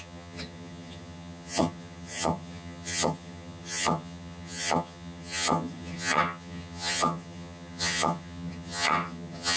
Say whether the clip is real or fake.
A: fake